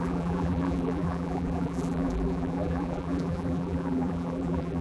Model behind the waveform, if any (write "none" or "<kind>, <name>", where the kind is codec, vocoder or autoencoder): vocoder, BigVGAN v2